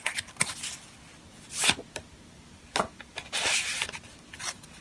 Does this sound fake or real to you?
real